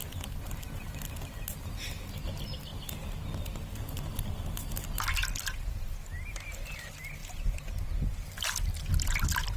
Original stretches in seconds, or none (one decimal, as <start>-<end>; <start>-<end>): 0.0-9.6